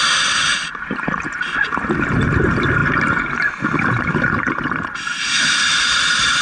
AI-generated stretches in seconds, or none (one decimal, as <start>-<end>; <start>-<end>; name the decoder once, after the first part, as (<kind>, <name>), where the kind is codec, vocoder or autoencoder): 5.1-6.4 (vocoder, BigVGAN v2)